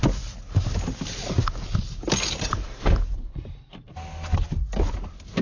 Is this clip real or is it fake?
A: real